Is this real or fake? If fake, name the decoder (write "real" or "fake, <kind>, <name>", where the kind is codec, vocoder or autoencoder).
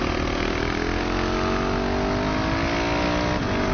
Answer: real